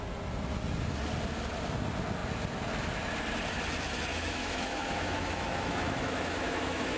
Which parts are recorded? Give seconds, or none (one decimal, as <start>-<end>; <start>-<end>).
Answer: 0.0-4.1